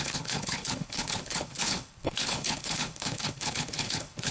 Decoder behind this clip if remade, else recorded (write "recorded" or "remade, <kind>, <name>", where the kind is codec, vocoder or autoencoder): remade, codec, HILCodec